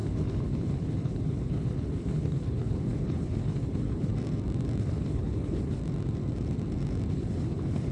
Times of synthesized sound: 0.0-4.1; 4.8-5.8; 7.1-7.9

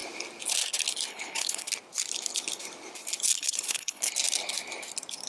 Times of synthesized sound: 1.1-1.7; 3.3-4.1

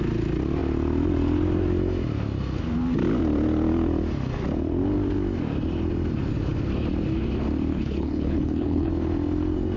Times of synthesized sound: 7.7-8.9